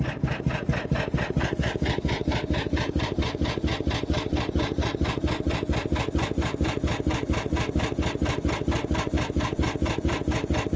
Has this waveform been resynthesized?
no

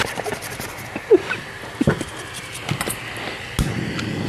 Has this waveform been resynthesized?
no